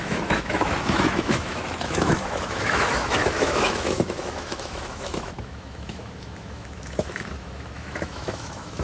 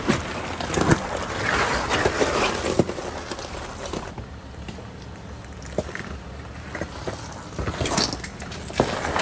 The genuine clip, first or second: second